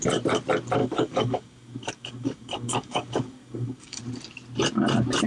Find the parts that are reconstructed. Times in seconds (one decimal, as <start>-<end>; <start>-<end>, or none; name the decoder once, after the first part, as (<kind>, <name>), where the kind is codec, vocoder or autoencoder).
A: 0.8-4.0 (codec, DAC)